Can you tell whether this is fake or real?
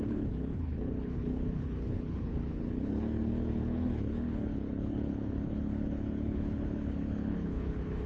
fake